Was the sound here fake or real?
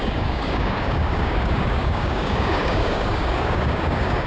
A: fake